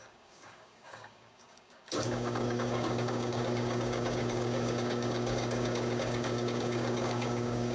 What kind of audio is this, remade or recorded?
remade